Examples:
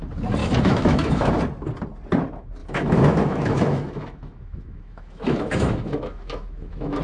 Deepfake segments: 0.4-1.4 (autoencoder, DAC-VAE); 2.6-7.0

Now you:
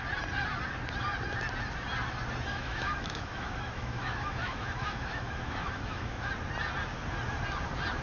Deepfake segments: 2.5-6.3 (autoencoder, DAC-VAE)

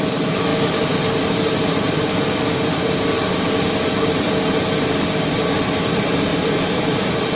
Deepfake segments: none